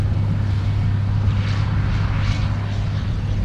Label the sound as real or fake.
real